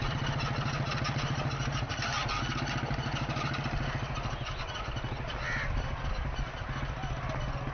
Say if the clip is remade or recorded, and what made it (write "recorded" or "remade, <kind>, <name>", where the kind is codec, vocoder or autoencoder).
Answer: recorded